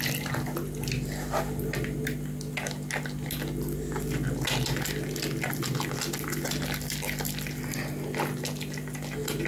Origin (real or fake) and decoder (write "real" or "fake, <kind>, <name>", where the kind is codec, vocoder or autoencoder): real